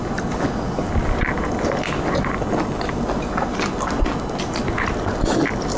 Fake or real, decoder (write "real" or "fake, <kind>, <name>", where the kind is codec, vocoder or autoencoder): real